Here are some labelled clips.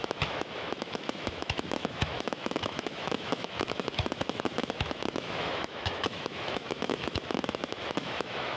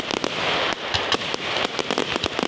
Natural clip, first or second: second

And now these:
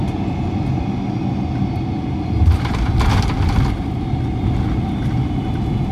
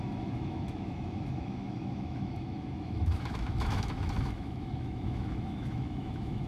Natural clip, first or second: first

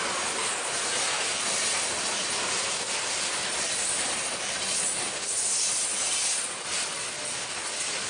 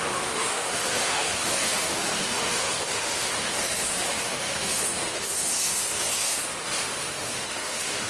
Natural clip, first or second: first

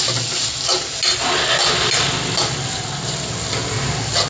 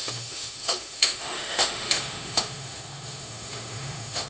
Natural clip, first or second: first